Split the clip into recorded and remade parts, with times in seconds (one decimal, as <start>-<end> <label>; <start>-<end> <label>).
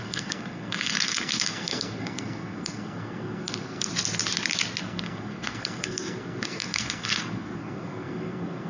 0.0-3.9 remade; 3.9-4.8 recorded; 4.8-8.7 remade